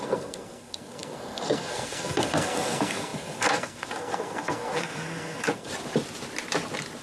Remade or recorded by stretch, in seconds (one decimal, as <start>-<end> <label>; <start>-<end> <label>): 0.0-5.7 remade; 5.7-7.0 recorded